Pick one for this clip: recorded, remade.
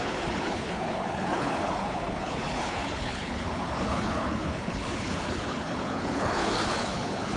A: remade